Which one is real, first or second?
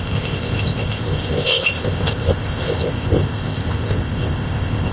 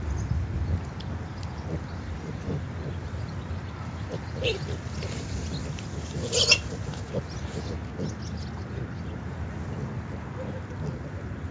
second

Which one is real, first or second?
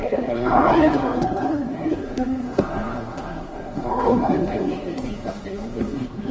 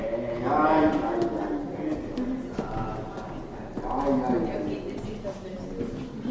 second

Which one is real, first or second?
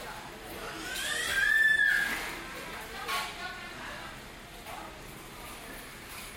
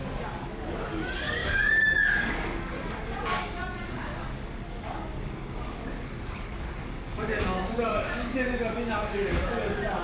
first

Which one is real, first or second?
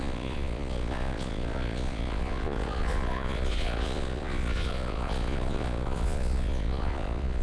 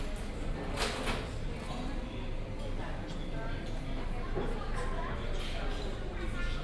second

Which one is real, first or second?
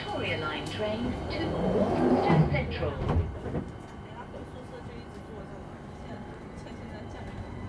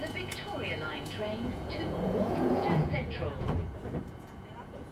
first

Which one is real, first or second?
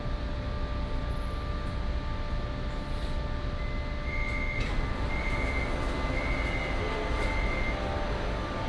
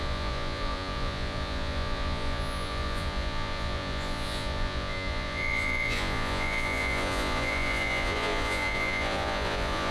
first